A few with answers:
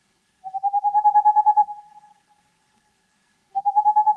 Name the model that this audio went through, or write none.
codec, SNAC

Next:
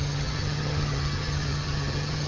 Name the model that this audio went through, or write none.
vocoder, HiFi-GAN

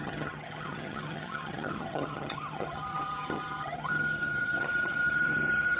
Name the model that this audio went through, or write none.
vocoder, HiFi-GAN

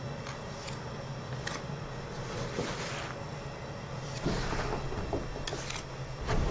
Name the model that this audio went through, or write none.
none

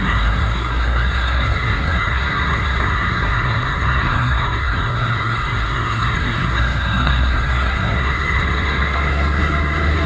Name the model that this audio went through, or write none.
codec, SNAC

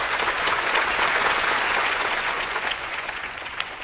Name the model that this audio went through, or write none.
vocoder, Vocos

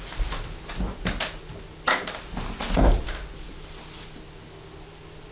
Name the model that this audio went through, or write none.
none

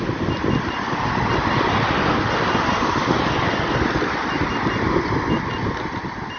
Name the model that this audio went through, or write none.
none